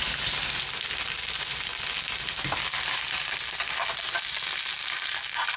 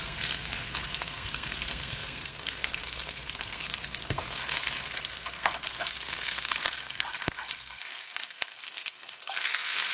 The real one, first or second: first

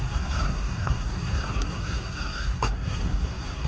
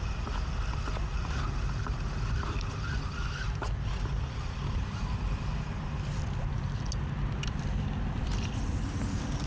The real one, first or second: second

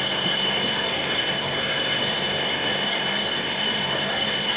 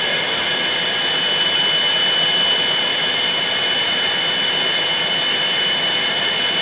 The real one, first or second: second